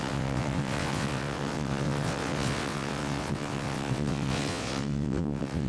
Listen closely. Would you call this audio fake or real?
fake